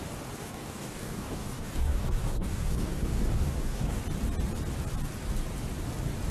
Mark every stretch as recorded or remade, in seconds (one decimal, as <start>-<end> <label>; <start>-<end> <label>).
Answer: 0.0-0.4 recorded; 0.4-4.0 remade; 4.0-6.3 recorded